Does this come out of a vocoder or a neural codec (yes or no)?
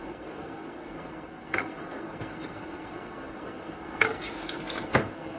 yes